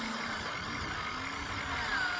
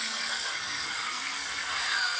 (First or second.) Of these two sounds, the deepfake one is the second